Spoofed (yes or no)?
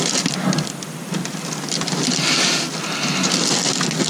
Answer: no